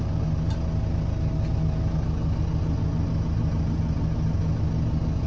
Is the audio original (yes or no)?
yes